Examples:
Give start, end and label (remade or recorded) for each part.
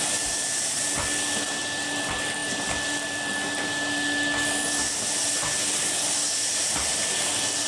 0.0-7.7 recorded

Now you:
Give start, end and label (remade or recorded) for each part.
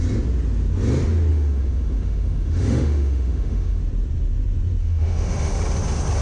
0.0-1.3 recorded; 1.3-3.8 remade; 3.8-4.8 recorded; 4.8-5.6 remade; 5.6-6.2 recorded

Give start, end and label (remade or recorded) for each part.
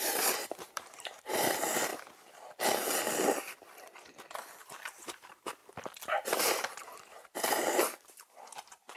0.0-1.9 remade; 1.9-4.6 recorded; 4.6-5.6 remade; 5.6-6.7 recorded; 6.7-9.0 remade